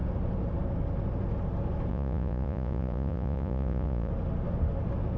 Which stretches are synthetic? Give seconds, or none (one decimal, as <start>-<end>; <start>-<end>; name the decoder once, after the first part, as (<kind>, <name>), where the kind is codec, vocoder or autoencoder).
1.9-4.1 (vocoder, Vocos)